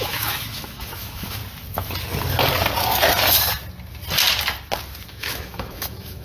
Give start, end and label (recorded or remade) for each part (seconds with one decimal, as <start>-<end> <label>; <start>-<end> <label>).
0.0-1.4 remade; 1.4-5.1 recorded; 5.1-6.2 remade

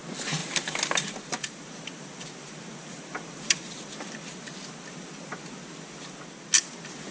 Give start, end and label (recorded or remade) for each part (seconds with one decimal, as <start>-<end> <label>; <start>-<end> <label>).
0.0-0.4 recorded; 0.4-4.7 remade; 4.7-7.1 recorded